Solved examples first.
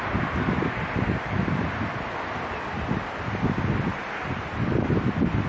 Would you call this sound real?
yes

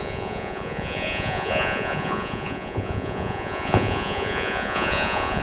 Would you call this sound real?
no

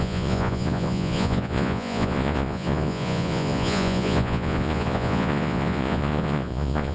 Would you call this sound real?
no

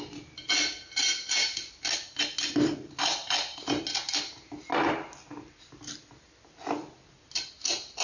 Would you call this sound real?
yes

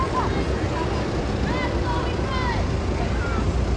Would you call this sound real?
yes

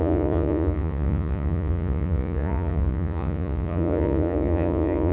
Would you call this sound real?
no